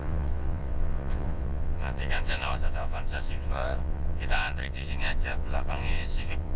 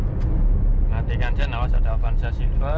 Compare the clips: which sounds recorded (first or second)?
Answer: second